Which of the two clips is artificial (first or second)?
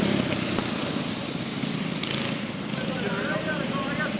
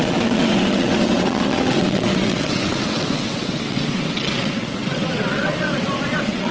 second